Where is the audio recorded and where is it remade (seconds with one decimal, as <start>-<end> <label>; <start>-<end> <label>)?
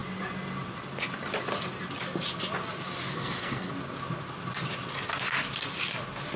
0.0-3.1 recorded; 3.1-3.7 remade; 3.7-6.4 recorded